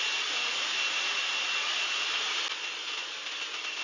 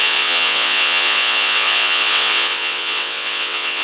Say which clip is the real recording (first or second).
first